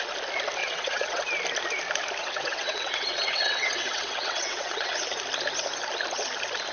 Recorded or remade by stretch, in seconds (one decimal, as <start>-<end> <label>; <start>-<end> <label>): 0.0-0.6 recorded; 0.6-1.2 remade; 1.2-2.2 recorded; 2.2-4.9 remade; 4.9-6.7 recorded